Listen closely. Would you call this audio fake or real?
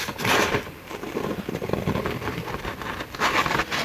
real